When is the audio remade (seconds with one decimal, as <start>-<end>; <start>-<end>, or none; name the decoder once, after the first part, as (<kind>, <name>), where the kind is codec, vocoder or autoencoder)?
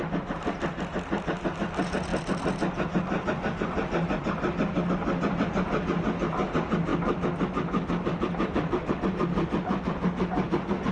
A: none